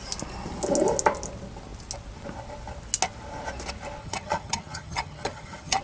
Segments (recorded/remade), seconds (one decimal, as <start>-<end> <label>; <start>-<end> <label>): 0.0-4.0 recorded; 4.0-5.8 remade